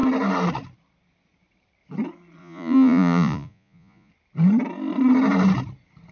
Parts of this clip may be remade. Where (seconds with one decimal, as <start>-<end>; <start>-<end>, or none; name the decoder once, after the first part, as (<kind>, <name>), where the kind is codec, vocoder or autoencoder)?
2.4-4.1 (vocoder, Vocos)